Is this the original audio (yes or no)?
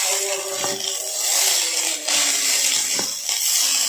yes